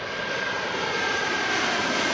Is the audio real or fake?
fake